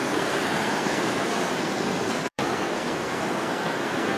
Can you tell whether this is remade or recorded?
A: remade